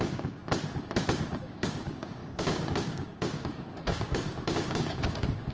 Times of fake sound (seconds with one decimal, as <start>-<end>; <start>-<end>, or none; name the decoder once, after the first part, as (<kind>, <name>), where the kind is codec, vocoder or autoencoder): 0.0-0.4 (codec, DAC); 1.4-5.5